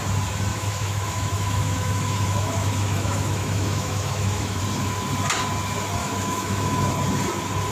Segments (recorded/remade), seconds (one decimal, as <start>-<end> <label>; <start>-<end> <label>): 0.0-0.5 recorded; 0.5-4.6 remade; 4.6-6.0 recorded; 6.0-6.9 remade; 6.9-7.7 recorded